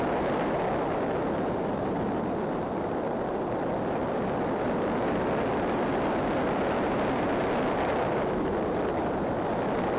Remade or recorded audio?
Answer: recorded